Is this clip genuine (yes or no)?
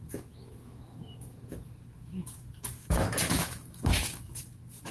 no